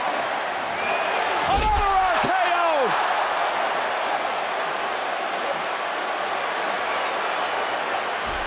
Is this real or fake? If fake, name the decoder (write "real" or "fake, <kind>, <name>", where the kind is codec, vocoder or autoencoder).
real